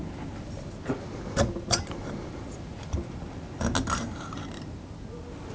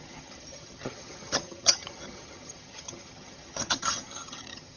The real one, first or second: first